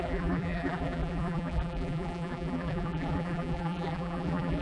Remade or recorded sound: remade